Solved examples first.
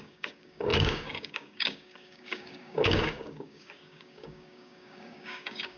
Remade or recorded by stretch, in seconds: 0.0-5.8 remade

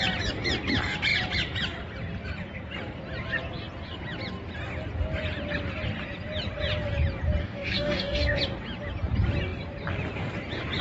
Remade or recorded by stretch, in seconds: 0.0-7.4 recorded; 7.4-8.4 remade; 8.4-10.8 recorded

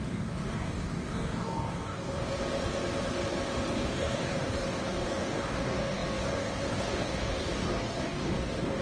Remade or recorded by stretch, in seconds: 0.0-2.3 remade; 2.3-3.7 recorded; 3.7-8.8 remade

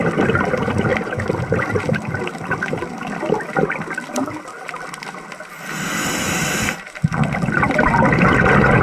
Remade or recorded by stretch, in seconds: 0.0-8.8 recorded